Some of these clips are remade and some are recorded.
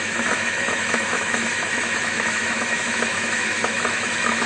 remade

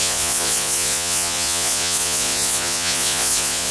remade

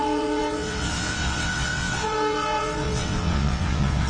remade